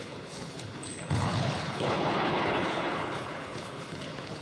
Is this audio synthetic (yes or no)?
yes